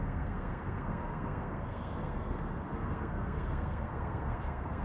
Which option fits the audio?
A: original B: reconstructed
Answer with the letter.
B